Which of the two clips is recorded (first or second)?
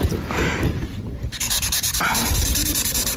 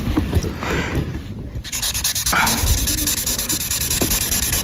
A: second